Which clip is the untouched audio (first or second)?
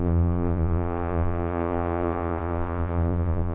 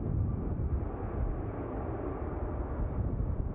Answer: second